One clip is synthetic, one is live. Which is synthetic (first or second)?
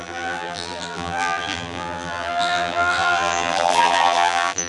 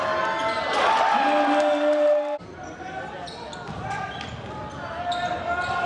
first